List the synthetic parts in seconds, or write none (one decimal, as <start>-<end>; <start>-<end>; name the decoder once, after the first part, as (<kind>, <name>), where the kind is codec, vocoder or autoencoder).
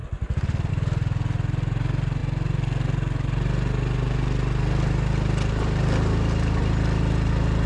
none